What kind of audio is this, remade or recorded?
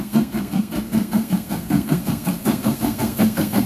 remade